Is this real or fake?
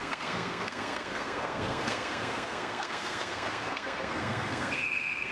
fake